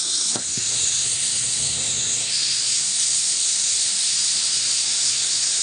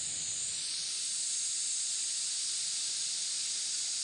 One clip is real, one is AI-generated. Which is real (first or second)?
second